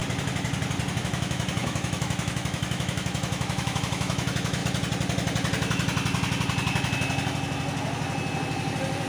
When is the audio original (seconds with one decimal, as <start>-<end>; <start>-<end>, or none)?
0.0-1.0; 4.6-9.1